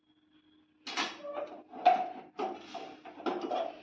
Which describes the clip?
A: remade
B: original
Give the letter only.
B